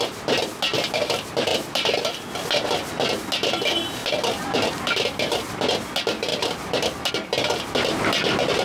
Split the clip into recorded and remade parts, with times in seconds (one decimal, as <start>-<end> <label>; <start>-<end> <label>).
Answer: 0.0-1.5 recorded; 1.5-2.0 remade; 2.0-4.0 recorded; 4.0-5.3 remade; 5.3-6.3 recorded; 6.3-7.1 remade; 7.1-8.6 recorded